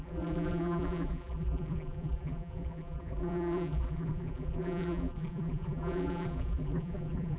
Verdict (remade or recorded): remade